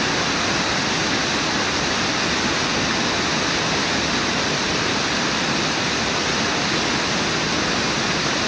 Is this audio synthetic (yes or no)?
no